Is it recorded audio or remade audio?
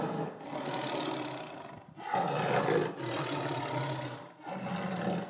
recorded